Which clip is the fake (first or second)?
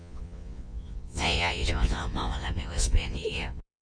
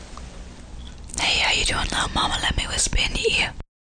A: first